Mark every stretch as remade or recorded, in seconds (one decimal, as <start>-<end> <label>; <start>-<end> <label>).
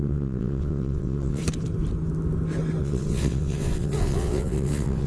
0.0-1.4 remade; 1.4-2.8 recorded; 2.8-5.1 remade